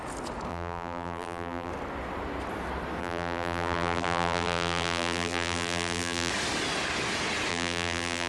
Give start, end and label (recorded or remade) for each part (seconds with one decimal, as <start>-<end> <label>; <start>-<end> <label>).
0.0-0.5 recorded; 0.5-1.7 remade; 1.7-3.0 recorded; 3.0-6.3 remade; 6.3-7.5 recorded; 7.5-8.3 remade